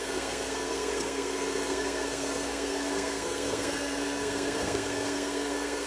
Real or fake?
fake